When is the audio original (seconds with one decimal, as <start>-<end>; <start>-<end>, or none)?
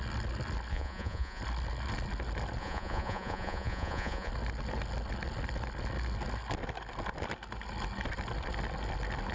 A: 0.0-0.7; 1.4-2.6; 4.3-9.3